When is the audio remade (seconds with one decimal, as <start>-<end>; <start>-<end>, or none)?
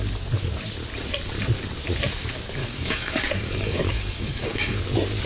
2.6-4.8